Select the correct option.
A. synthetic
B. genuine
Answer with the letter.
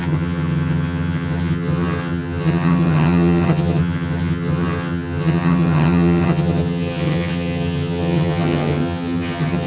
A